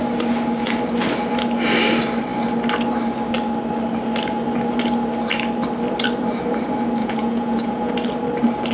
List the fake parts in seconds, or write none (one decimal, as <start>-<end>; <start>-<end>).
7.0-7.9